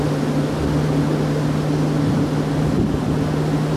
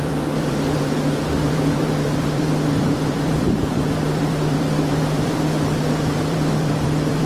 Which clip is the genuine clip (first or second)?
first